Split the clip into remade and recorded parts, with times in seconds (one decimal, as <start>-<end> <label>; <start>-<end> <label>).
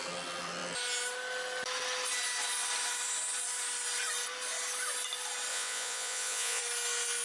0.0-5.5 recorded; 5.5-6.6 remade; 6.6-7.2 recorded